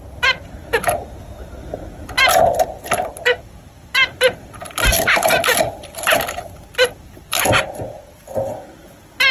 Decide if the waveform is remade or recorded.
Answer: recorded